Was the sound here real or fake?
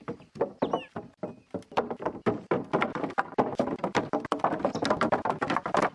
real